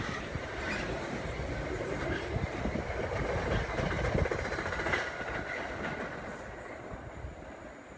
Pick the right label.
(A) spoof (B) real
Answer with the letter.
B